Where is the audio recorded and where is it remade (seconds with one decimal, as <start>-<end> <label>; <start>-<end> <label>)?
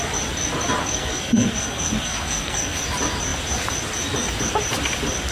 0.0-0.8 recorded; 0.8-2.8 remade; 2.8-5.3 recorded